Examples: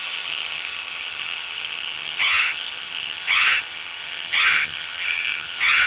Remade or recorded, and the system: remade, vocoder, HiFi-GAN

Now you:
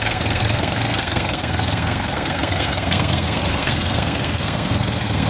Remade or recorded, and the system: remade, codec, SNAC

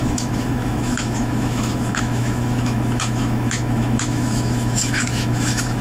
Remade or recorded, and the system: remade, autoencoder, DAC-VAE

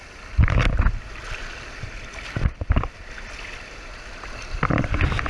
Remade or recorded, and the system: recorded